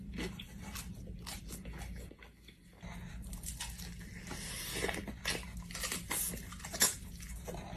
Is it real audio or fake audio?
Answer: real